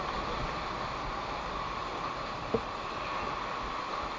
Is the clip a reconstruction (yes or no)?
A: no